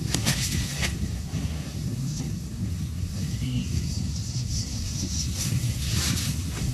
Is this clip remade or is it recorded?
remade